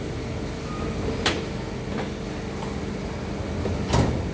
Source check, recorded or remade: recorded